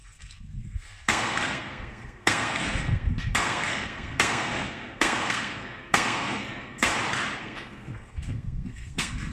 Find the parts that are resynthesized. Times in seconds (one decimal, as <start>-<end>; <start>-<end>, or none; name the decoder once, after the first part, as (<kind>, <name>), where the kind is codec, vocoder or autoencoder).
0.0-6.9 (codec, SNAC); 7.4-9.3